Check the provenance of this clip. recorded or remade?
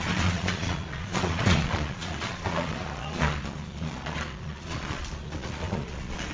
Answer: remade